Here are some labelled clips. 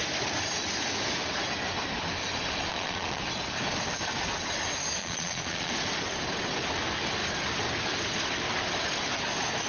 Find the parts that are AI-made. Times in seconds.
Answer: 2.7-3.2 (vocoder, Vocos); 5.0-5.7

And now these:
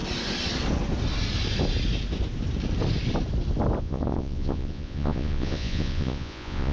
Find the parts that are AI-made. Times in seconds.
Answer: 3.8-6.7 (vocoder, Vocos)

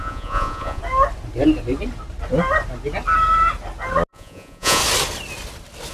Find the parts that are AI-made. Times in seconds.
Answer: 0.0-0.8 (vocoder, Vocos); 4.1-4.8

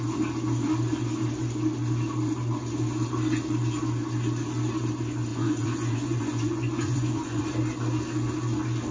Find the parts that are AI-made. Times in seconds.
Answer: 5.3-7.4 (vocoder, Vocos)